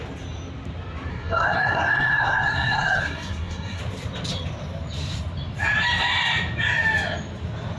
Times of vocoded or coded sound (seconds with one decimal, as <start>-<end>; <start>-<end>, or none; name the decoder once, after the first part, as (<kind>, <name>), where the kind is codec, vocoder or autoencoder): 1.1-3.8 (codec, SNAC)